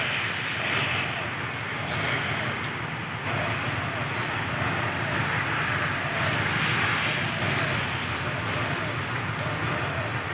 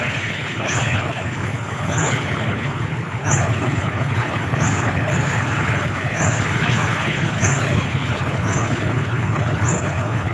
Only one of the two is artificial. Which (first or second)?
second